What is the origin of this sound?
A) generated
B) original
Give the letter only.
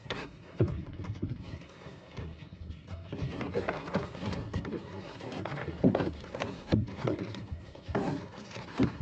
A